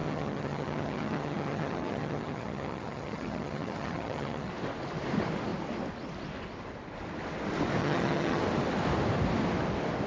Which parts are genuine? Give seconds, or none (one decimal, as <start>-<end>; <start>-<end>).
4.5-7.8; 8.4-10.1